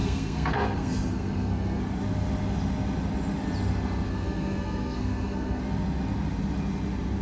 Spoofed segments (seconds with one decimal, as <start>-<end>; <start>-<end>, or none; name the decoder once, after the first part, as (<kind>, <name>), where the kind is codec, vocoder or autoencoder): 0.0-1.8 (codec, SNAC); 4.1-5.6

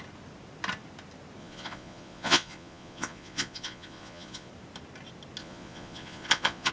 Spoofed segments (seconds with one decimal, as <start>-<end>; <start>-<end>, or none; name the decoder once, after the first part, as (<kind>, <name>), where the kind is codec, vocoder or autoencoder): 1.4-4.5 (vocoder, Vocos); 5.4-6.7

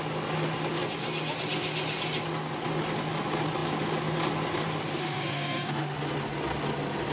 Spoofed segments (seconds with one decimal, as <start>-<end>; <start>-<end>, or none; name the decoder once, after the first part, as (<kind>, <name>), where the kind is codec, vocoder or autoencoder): 5.0-6.0 (autoencoder, DAC-VAE)